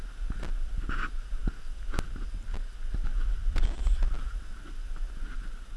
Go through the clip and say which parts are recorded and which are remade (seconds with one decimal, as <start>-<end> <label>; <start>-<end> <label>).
0.0-5.8 recorded